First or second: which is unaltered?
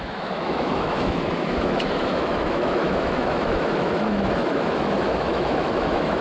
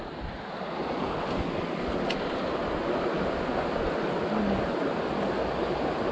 second